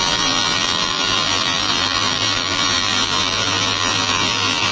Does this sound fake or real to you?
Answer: fake